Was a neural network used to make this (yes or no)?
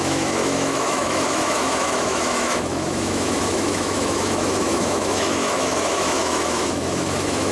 yes